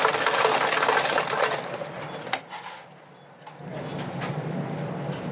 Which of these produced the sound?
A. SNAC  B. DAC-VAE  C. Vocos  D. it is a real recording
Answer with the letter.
D